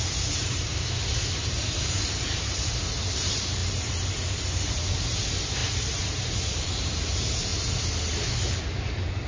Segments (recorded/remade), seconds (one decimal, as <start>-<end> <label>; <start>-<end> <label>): 0.0-0.7 remade; 0.7-1.3 recorded; 1.3-3.6 remade; 3.6-4.7 recorded; 4.7-7.5 remade; 7.5-8.5 recorded; 8.5-9.3 remade